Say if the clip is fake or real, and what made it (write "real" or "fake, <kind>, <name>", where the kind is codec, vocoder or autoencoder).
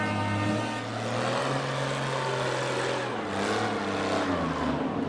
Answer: real